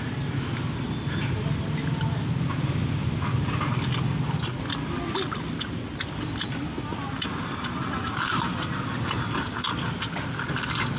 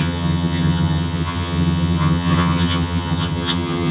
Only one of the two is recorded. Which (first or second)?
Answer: first